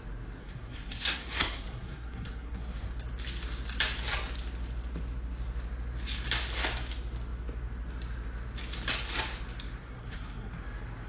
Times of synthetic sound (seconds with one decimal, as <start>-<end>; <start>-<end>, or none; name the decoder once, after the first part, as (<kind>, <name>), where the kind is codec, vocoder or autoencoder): 0.4-2.9 (codec, SNAC); 9.8-10.5